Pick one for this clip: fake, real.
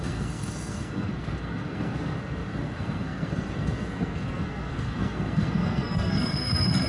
fake